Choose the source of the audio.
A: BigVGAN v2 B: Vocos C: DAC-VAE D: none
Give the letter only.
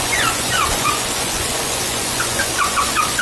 B